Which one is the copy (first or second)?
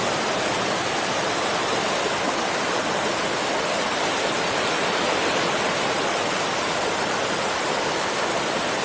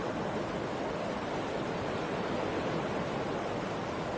first